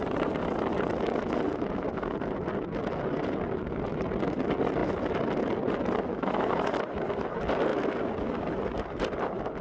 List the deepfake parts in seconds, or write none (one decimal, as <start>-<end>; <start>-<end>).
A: 6.1-6.7